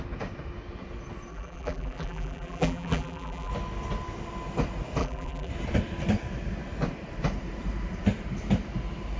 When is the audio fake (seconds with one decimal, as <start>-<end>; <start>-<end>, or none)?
1.3-3.5; 5.0-5.5